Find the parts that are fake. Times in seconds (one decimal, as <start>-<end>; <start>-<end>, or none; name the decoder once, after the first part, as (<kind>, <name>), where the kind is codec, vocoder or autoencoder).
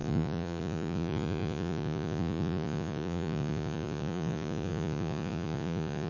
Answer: 0.0-6.1 (vocoder, Vocos)